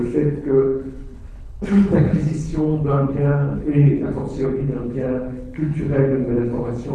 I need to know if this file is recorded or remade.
remade